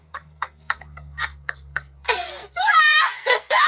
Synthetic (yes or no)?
yes